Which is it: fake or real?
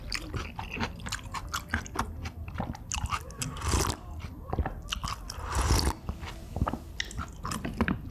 real